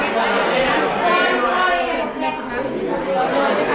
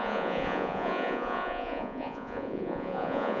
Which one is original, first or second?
first